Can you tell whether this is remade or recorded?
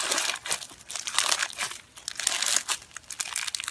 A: recorded